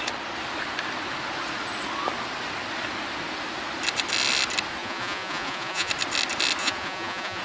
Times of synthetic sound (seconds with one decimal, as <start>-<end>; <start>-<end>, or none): 4.8-5.9; 6.6-7.4